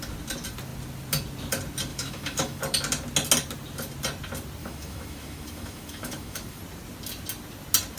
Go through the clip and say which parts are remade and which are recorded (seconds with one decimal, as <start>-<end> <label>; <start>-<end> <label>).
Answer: 0.0-1.9 recorded; 1.9-2.6 remade; 2.6-4.6 recorded; 4.6-6.6 remade; 6.6-8.0 recorded